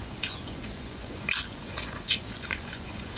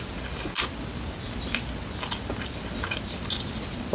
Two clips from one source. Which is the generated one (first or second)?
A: first